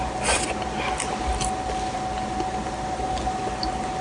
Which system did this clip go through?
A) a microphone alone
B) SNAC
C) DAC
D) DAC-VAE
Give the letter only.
A